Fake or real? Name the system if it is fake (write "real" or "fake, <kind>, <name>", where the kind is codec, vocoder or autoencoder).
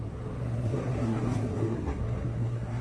fake, codec, SNAC